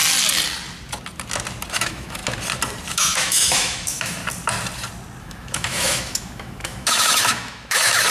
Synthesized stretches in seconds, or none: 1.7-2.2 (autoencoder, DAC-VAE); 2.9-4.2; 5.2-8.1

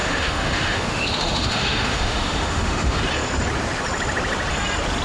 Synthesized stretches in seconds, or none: 0.0-3.0 (autoencoder, DAC-VAE)

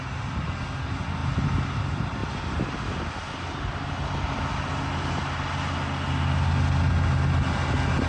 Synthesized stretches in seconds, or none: none

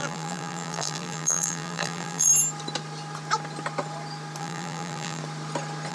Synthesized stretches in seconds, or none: 0.0-2.3 (vocoder, BigVGAN v2); 4.4-5.2

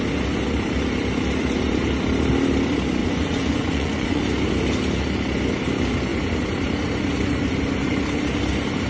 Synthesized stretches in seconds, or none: 3.0-4.2 (vocoder, Vocos)